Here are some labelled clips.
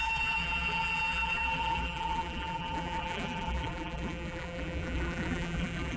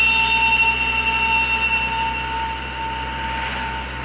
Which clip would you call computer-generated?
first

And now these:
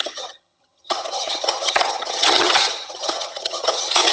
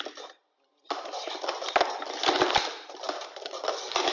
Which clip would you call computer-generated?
first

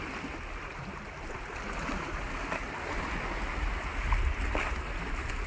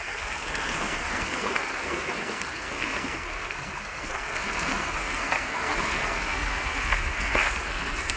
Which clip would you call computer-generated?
second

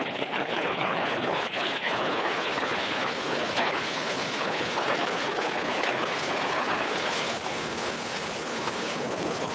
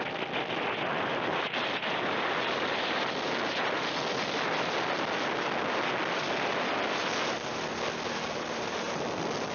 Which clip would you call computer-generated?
first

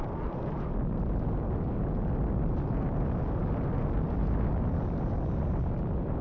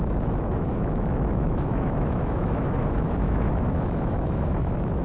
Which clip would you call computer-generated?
second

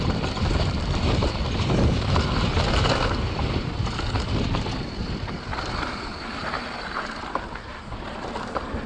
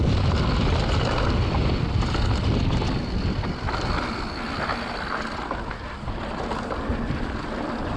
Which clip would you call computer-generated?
first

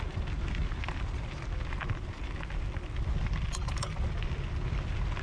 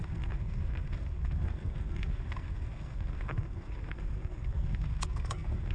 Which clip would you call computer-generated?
second